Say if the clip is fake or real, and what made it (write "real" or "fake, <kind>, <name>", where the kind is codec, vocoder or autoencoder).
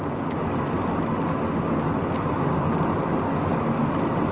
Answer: real